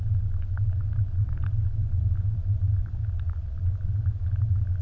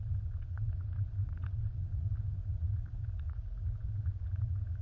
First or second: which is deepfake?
second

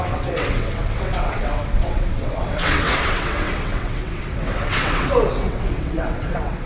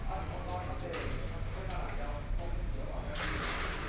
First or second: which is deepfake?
first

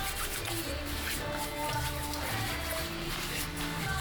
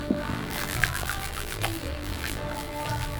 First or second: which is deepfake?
second